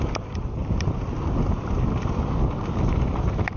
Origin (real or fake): real